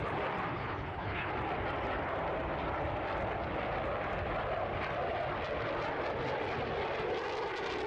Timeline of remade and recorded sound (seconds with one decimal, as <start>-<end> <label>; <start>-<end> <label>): 0.0-0.5 recorded; 0.5-1.3 remade; 1.3-7.9 recorded